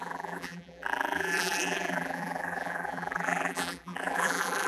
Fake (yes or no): yes